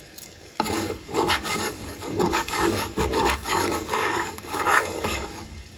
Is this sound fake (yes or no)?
yes